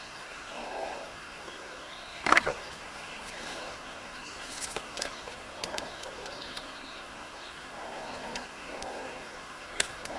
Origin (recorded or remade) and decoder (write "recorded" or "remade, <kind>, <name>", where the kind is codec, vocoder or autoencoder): remade, codec, SNAC